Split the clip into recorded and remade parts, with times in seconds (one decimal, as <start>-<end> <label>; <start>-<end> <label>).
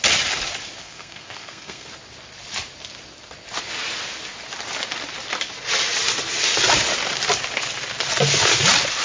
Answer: 0.0-0.8 recorded; 0.8-1.9 remade; 1.9-9.0 recorded